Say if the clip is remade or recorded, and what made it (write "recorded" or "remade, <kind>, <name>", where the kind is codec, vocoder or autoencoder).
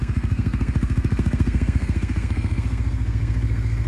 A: remade, codec, SNAC